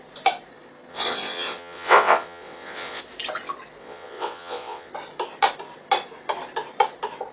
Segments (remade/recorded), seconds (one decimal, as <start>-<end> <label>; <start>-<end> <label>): 0.0-0.9 recorded; 0.9-3.0 remade; 3.0-3.8 recorded; 3.8-4.9 remade; 4.9-7.3 recorded